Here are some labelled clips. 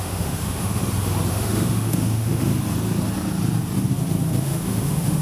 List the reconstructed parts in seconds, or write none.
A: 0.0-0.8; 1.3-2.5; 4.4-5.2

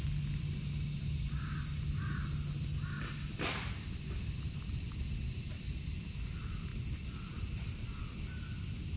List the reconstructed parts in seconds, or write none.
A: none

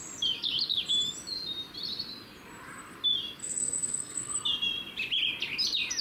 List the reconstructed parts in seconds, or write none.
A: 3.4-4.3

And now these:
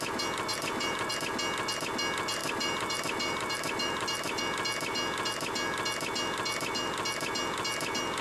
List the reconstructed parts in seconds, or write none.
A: 0.5-1.1; 2.4-4.4

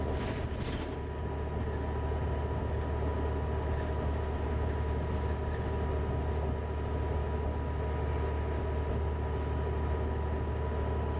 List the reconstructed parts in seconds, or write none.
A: none

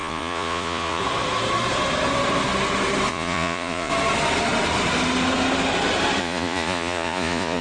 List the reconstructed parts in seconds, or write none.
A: 0.0-1.0; 3.1-3.9; 6.2-7.6

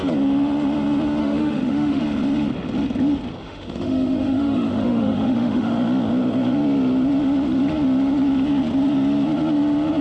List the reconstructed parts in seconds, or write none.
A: 1.2-2.0; 3.4-5.7